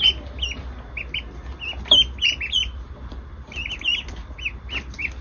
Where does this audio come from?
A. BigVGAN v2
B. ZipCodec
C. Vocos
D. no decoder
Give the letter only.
D